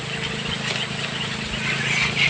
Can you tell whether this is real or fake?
real